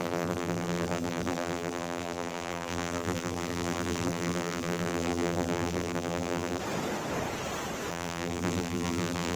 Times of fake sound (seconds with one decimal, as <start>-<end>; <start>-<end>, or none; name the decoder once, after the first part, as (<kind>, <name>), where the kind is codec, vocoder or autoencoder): 0.0-6.6 (vocoder, BigVGAN v2); 7.9-9.4